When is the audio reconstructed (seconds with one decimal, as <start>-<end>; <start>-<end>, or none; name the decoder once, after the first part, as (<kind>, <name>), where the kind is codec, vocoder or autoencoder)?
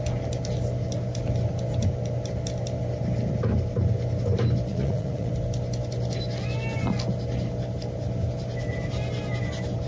4.7-5.3 (vocoder, Vocos)